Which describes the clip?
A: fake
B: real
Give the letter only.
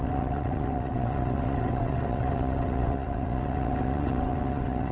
A